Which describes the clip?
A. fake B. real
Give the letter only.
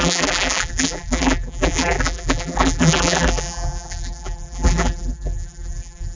A